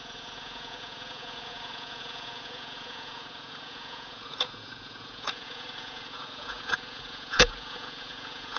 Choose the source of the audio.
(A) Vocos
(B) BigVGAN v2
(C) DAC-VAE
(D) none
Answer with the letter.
A